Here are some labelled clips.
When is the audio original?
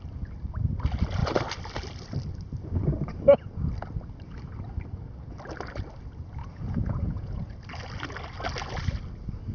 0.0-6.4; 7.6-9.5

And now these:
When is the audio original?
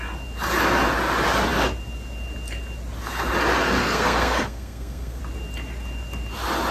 0.0-3.8; 5.2-6.7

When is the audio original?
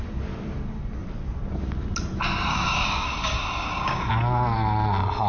0.0-2.5; 4.1-5.3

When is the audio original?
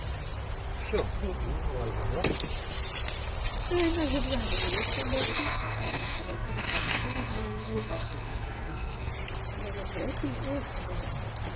0.0-5.3; 9.1-11.6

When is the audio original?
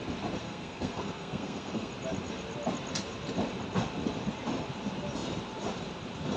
0.0-0.4; 1.9-6.4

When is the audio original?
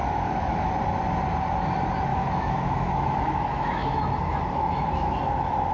0.7-2.1; 5.2-5.7